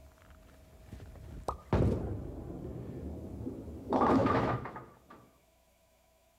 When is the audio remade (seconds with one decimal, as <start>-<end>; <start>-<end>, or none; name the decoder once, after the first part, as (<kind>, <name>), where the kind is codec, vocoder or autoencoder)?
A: 3.8-6.4 (autoencoder, DAC-VAE)